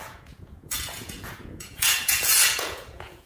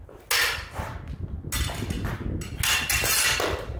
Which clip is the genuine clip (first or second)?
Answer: second